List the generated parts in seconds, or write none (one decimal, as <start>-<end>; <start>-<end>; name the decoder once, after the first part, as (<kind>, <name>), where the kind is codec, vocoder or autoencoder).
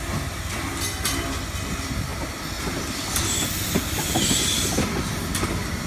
none